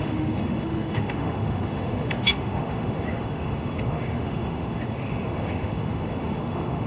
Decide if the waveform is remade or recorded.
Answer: remade